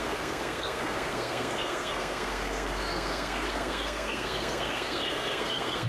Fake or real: fake